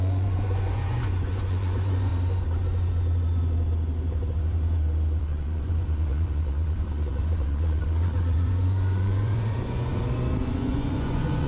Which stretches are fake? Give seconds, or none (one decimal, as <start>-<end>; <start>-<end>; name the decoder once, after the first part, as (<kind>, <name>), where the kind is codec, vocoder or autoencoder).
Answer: 0.0-2.1 (vocoder, Vocos); 5.2-9.9; 10.4-11.5